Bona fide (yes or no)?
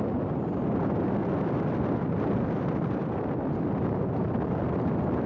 yes